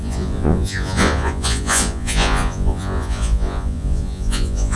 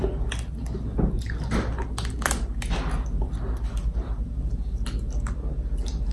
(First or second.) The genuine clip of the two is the second